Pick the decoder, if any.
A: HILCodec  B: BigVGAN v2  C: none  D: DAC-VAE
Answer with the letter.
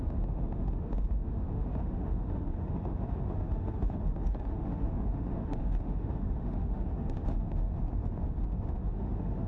D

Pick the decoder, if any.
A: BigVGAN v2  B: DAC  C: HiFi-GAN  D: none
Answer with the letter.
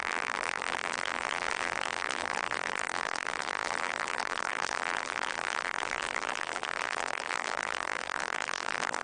A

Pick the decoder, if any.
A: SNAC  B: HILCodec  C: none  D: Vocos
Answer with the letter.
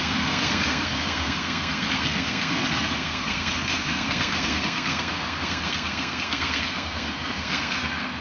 A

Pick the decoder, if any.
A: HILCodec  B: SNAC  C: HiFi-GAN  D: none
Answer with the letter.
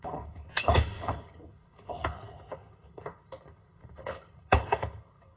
A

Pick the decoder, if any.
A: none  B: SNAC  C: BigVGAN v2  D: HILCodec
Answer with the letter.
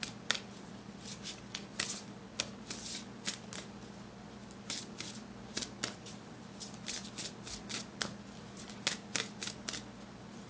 A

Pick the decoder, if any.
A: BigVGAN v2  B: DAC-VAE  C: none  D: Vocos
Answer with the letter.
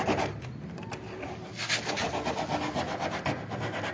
C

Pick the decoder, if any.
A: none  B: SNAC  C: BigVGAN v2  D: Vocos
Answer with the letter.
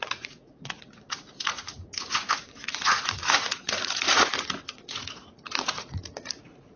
D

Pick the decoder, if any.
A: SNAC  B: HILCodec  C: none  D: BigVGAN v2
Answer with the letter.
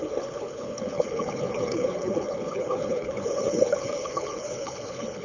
B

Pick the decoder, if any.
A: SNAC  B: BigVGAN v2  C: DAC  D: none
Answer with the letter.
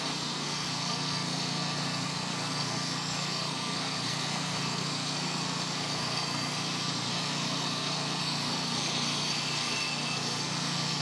A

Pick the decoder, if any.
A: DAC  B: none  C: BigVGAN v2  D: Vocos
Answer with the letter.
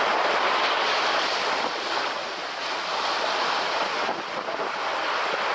B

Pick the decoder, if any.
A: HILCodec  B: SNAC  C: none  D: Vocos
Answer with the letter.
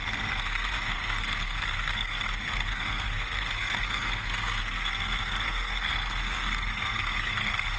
B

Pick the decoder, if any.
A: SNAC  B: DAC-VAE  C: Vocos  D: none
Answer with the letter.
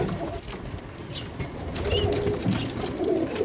D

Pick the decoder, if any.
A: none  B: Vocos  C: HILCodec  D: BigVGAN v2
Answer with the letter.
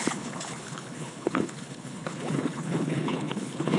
C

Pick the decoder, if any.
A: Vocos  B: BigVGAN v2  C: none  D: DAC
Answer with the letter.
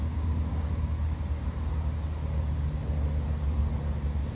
C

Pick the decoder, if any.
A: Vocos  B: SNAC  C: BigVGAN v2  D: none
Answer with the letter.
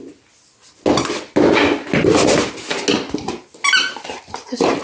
D